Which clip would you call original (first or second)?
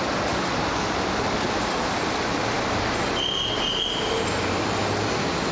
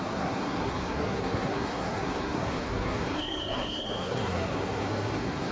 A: first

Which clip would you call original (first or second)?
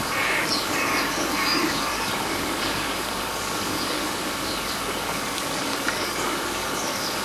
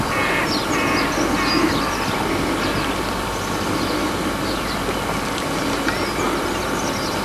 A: second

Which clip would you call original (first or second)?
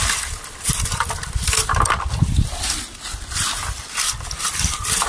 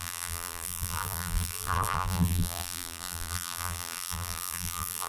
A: first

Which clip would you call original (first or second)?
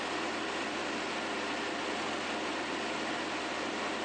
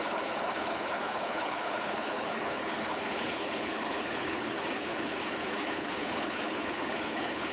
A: first